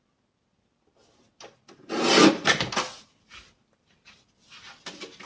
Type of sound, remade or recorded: recorded